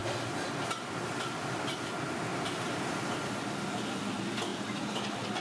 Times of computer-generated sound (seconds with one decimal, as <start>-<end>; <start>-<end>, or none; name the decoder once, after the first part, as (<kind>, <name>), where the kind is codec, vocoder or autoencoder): 2.3-2.8 (vocoder, BigVGAN v2); 4.5-5.0